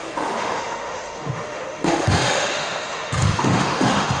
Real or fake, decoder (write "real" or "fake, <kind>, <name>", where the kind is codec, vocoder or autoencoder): fake, autoencoder, DAC-VAE